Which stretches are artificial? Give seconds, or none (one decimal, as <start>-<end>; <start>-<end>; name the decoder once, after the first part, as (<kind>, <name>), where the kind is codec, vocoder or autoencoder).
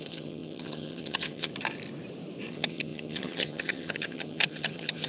0.0-1.5 (vocoder, HiFi-GAN); 2.5-5.1